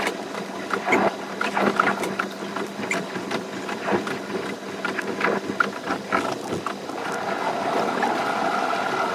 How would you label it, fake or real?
real